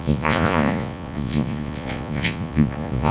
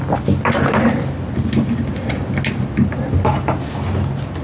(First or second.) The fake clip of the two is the first